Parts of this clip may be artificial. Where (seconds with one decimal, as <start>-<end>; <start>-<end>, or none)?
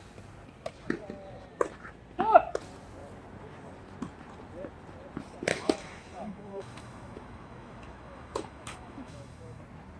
5.5-9.6